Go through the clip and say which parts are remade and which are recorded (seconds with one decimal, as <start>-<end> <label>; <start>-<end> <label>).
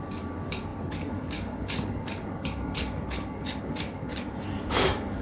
0.0-4.1 remade; 4.1-4.7 recorded; 4.7-5.2 remade